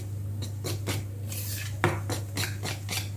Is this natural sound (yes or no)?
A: yes